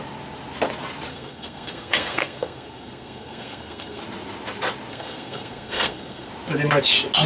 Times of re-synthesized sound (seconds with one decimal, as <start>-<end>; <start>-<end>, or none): 1.1-4.0; 4.9-6.3